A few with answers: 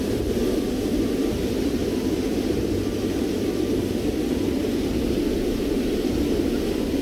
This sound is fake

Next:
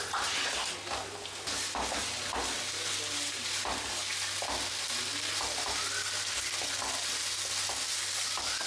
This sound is real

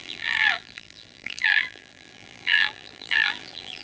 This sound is fake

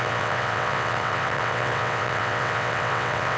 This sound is fake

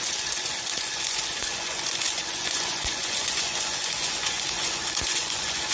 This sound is fake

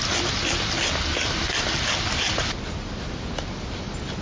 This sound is real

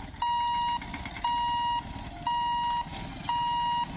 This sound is real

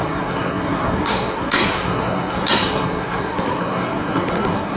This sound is fake